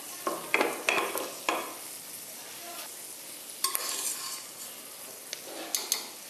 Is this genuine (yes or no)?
yes